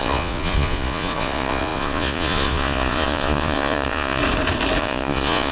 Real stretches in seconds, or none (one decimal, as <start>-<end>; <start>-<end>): 4.2-4.8